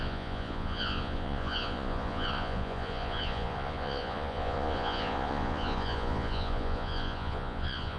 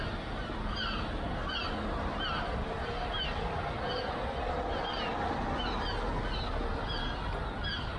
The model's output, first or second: first